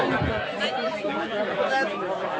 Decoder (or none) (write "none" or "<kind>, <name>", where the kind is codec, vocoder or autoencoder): none